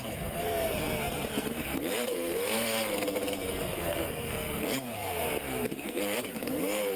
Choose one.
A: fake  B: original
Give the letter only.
A